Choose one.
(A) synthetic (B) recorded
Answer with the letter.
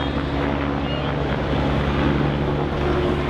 B